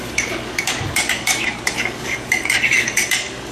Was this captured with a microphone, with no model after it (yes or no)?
no